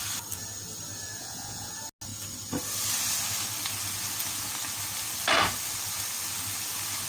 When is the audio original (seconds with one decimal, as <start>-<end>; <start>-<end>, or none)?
0.0-1.2; 1.7-7.1